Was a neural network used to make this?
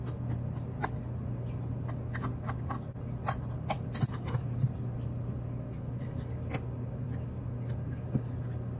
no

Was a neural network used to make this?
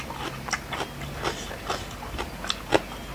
no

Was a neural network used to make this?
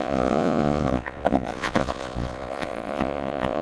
yes